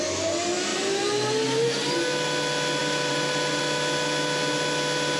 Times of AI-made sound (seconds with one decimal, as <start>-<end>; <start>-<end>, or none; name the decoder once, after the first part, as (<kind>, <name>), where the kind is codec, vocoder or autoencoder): 0.7-1.9 (vocoder, BigVGAN v2); 2.8-3.6